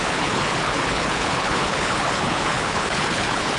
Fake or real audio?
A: fake